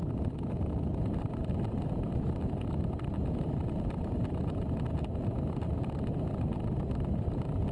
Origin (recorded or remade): recorded